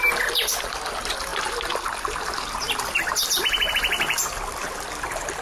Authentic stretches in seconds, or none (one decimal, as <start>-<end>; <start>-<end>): 0.0-5.4